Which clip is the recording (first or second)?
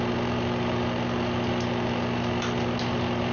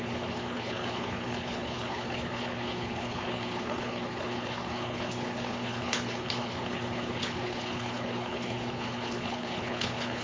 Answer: first